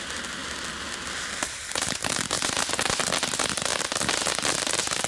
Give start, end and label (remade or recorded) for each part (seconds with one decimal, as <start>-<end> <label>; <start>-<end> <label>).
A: 0.0-5.1 recorded